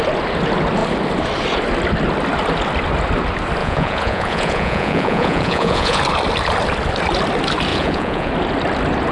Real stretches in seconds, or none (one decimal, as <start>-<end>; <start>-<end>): 0.0-3.6; 6.0-7.7; 8.3-9.1

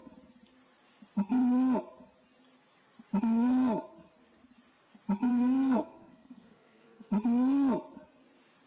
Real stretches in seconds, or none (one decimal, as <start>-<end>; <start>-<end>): 0.0-5.3; 7.1-8.7